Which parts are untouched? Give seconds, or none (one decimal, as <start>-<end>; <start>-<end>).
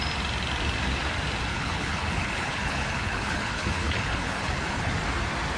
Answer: 0.0-1.5; 4.9-5.6